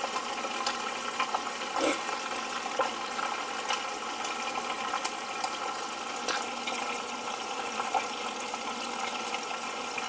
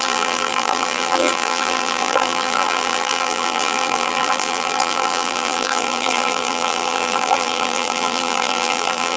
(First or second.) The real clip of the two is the first